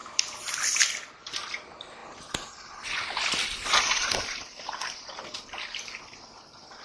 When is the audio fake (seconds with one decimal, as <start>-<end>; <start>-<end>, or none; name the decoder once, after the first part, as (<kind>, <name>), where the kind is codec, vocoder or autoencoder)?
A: 2.0-5.2 (vocoder, BigVGAN v2)